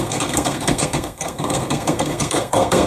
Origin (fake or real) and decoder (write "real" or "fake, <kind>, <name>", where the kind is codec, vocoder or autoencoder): fake, codec, SNAC